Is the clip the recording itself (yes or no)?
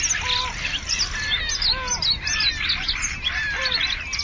yes